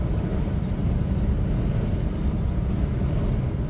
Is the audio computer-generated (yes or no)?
no